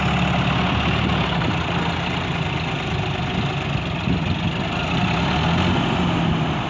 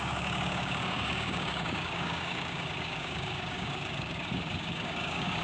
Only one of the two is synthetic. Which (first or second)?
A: second